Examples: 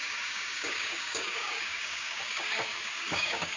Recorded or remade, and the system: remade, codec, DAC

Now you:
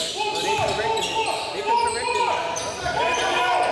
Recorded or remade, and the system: recorded